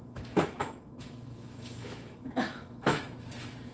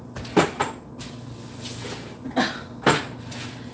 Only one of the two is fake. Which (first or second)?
first